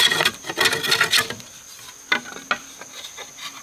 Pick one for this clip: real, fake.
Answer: real